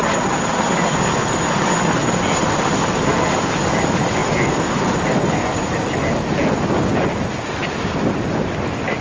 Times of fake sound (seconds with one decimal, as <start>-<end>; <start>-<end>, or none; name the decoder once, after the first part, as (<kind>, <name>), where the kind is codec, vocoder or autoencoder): none